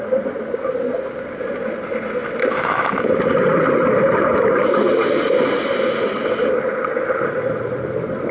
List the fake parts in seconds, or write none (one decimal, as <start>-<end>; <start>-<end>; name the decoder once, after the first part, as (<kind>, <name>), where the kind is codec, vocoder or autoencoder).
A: none